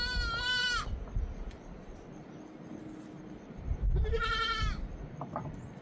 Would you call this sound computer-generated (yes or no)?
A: no